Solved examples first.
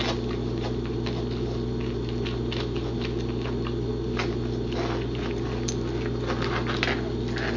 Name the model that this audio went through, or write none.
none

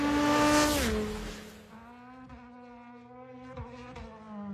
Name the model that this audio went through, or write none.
none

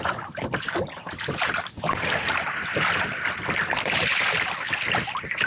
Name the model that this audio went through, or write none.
none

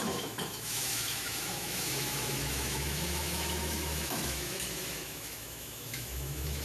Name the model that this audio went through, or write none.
autoencoder, DAC-VAE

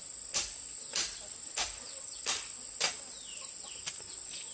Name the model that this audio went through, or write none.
none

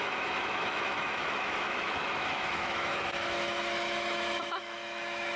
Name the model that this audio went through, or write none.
autoencoder, DAC-VAE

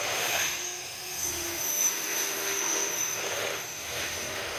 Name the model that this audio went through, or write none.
autoencoder, DAC-VAE